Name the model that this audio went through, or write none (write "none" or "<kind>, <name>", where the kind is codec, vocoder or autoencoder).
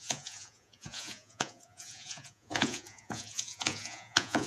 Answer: vocoder, Vocos